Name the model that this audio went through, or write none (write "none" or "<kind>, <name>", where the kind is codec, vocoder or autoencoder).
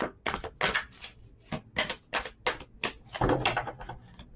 none